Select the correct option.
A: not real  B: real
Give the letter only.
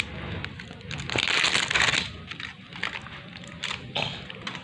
B